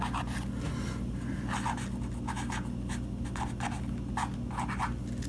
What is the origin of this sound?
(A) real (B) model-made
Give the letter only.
A